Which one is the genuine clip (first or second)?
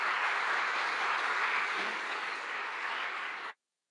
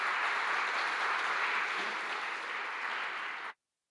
second